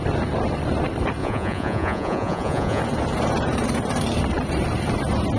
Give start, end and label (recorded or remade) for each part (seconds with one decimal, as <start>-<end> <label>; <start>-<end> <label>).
0.0-1.2 recorded; 1.2-2.8 remade; 2.8-5.4 recorded